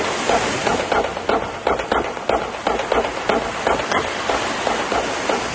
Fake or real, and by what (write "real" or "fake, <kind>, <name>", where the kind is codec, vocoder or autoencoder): real